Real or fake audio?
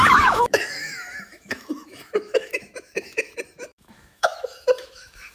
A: fake